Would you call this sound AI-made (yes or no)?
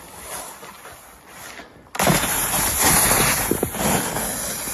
no